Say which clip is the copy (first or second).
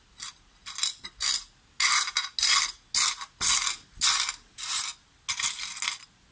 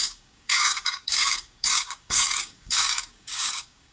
second